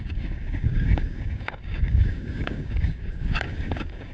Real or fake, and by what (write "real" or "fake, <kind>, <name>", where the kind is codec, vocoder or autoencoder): fake, codec, DAC